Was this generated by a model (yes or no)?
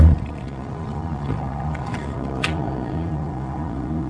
yes